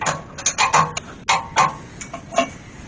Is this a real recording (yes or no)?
yes